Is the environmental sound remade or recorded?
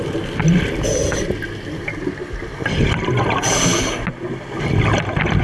recorded